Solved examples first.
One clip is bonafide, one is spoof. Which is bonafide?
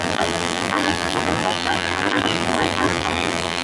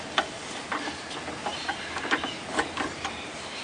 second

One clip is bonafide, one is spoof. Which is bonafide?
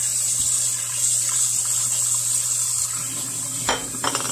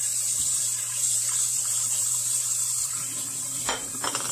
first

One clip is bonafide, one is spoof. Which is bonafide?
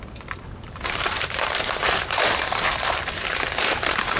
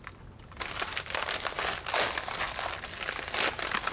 second